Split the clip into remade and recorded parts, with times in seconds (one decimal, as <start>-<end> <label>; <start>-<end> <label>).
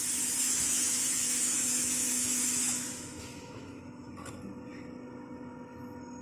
0.0-0.4 recorded; 0.4-4.1 remade; 4.1-6.2 recorded